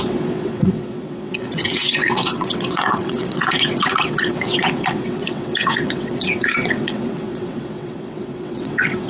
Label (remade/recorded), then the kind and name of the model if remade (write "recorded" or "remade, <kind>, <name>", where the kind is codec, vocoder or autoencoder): remade, vocoder, WaveNeXt